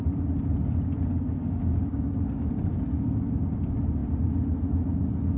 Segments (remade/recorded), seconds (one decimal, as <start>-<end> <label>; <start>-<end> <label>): 0.0-1.1 recorded; 1.1-3.4 remade; 3.4-5.4 recorded